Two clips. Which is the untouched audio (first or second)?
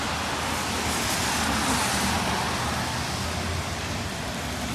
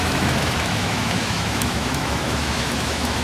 first